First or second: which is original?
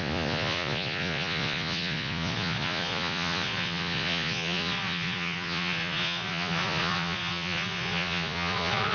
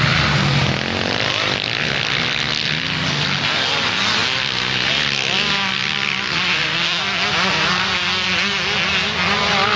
second